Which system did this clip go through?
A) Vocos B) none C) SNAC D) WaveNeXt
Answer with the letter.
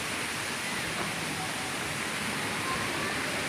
B